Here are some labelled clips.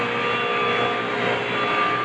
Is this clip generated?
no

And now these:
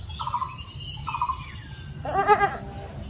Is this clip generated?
no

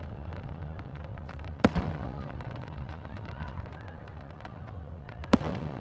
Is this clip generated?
yes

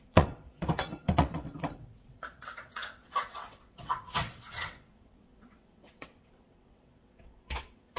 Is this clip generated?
yes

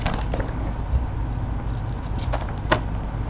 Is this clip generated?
no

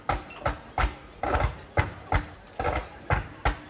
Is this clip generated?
no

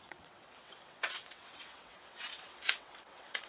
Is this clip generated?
yes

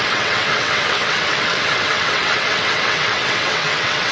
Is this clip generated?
yes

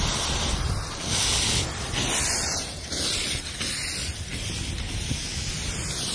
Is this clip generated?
no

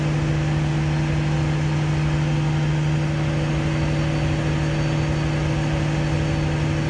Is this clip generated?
no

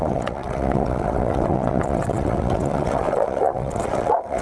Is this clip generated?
yes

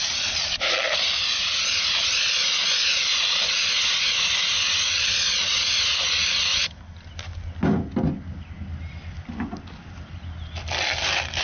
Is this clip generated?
no